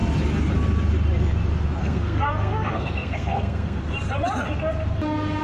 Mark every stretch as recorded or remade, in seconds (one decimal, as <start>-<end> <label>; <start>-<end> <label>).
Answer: 0.0-1.8 recorded; 1.8-3.8 remade; 3.8-5.4 recorded